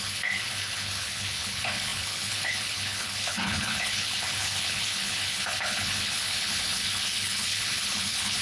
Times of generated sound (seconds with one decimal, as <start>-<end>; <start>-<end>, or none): 0.0-8.4